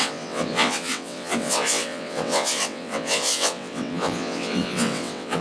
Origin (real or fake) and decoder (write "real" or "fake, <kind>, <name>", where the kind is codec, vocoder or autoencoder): fake, vocoder, WaveNeXt